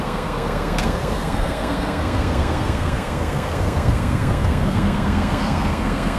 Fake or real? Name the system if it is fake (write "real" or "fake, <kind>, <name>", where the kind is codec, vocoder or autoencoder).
fake, codec, SNAC